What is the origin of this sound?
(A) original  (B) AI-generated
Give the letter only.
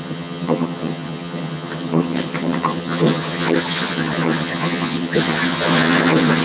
B